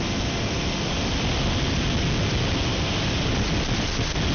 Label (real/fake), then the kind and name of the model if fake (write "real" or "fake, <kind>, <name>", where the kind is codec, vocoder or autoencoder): real